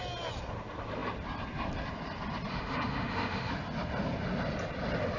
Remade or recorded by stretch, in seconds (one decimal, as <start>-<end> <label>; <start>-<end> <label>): 0.0-2.5 recorded; 2.5-3.5 remade; 3.5-5.2 recorded